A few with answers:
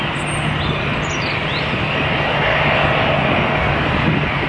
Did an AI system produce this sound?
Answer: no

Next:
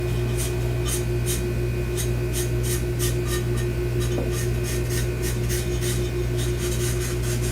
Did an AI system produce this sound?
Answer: no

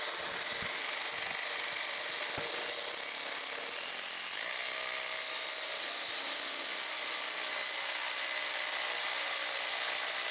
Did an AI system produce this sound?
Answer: no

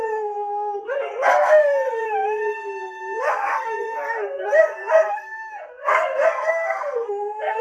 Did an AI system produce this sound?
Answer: yes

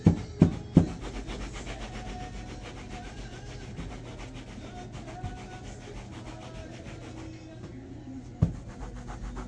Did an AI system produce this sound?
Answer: no